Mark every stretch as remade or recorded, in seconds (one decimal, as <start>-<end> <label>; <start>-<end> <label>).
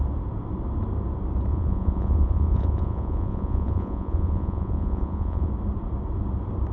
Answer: 0.0-1.5 recorded; 1.5-5.5 remade; 5.5-6.7 recorded